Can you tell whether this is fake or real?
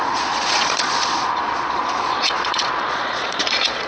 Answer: fake